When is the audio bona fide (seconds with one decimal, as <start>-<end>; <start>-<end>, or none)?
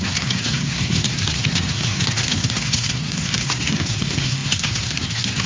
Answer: none